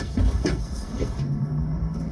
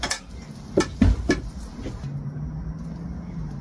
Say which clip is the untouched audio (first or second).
second